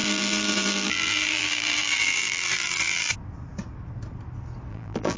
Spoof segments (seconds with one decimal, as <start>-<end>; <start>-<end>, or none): 0.0-3.1; 4.7-5.2